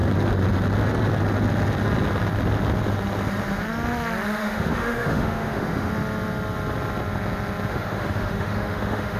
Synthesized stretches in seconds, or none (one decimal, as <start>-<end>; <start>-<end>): 4.4-5.9; 7.7-9.2